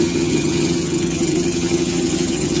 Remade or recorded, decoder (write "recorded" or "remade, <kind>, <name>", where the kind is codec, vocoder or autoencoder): remade, vocoder, HiFi-GAN